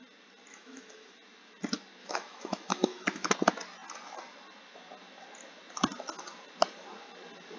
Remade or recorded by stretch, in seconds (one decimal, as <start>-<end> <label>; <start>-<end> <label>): 0.0-0.5 recorded; 0.5-1.2 remade; 1.2-2.0 recorded; 2.0-3.3 remade; 3.3-7.6 recorded